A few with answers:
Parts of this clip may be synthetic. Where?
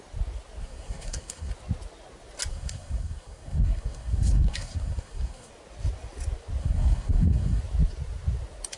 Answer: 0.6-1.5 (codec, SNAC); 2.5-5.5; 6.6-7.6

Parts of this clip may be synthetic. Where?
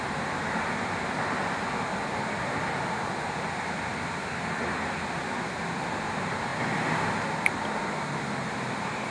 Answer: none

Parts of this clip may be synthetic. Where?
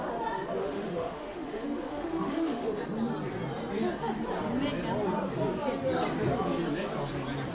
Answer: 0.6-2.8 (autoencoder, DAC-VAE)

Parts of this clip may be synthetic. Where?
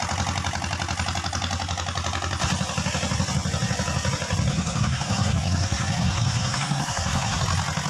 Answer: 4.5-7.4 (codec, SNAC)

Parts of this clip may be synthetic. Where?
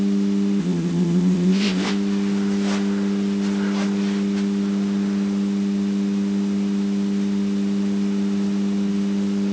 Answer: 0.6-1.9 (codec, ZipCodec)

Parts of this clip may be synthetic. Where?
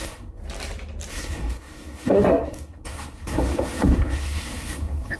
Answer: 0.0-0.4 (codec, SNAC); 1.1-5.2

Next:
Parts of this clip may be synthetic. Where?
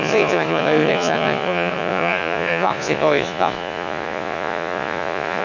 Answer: 0.0-5.4 (vocoder, Vocos)